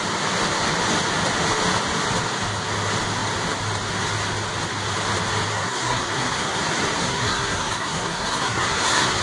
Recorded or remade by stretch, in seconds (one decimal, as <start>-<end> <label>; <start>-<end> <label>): 0.0-5.5 recorded; 5.5-6.6 remade; 6.6-7.0 recorded; 7.0-9.2 remade